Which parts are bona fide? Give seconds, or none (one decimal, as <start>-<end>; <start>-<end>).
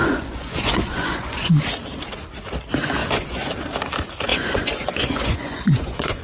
1.5-3.0; 3.5-4.3